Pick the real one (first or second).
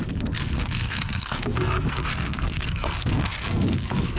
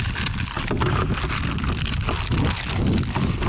second